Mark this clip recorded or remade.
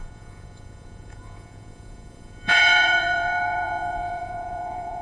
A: remade